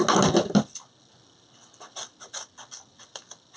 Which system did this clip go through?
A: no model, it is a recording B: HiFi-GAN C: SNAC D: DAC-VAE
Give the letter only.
A